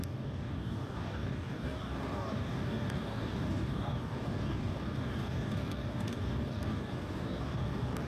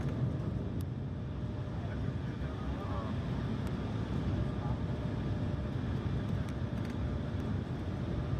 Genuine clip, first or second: second